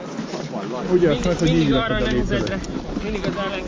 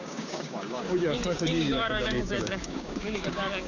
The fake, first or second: second